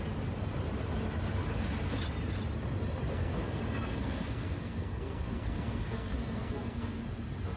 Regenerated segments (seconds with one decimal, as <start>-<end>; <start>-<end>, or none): 3.1-7.0